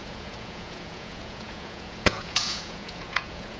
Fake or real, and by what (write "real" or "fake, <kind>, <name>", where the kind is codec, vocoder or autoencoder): fake, vocoder, Vocos